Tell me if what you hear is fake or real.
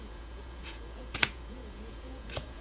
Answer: fake